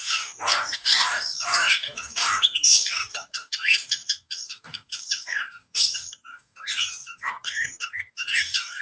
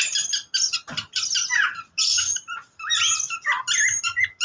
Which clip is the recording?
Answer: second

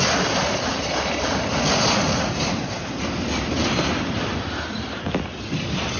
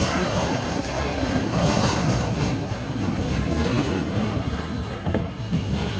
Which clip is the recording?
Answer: first